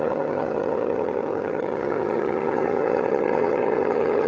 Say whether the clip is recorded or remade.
remade